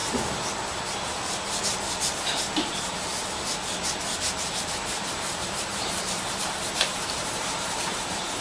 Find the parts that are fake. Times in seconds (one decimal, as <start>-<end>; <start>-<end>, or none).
4.5-8.4

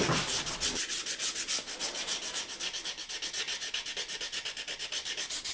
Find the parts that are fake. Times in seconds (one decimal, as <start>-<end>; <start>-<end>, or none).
1.8-2.4

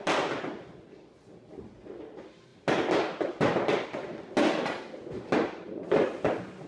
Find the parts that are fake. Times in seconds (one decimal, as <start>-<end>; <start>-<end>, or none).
none

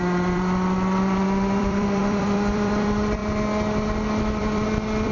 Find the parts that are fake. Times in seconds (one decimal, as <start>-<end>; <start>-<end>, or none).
0.0-3.2; 4.2-5.1

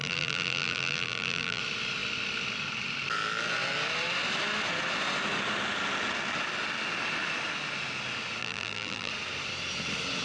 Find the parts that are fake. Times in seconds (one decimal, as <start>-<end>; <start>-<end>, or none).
0.0-1.6; 8.4-9.1

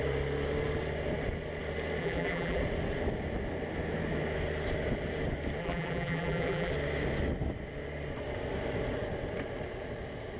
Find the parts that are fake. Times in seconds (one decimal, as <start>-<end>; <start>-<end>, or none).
2.0-2.6; 5.6-6.7

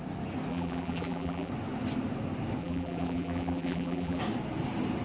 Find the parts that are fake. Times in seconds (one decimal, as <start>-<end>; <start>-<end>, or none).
0.5-1.5; 2.6-4.2